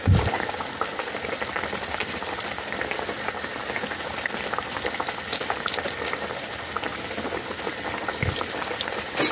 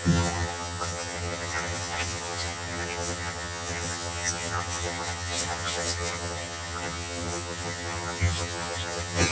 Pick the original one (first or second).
first